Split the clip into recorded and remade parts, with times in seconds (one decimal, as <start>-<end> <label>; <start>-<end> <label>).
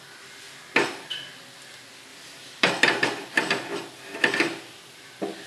0.0-2.1 recorded; 2.1-2.7 remade; 2.7-5.5 recorded